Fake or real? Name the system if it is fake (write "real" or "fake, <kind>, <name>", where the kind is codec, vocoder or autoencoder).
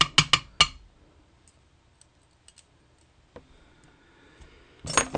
real